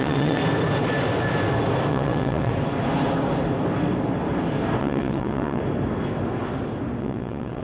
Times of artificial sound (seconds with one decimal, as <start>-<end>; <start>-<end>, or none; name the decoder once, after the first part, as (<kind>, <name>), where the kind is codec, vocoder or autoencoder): 0.0-0.4 (vocoder, WaveNeXt); 1.9-2.5; 4.8-5.6; 7.0-7.6